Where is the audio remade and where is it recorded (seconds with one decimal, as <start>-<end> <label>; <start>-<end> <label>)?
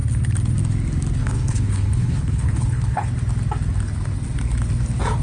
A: 0.0-1.2 recorded; 1.2-3.1 remade; 3.1-5.2 recorded